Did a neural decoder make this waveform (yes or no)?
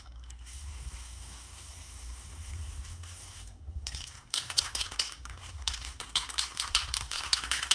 yes